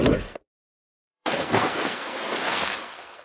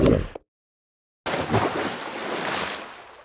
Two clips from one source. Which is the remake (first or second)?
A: first